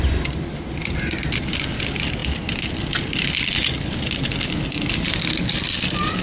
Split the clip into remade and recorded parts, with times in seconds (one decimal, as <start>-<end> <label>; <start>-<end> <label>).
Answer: 0.0-2.2 remade; 2.2-4.6 recorded; 4.6-6.2 remade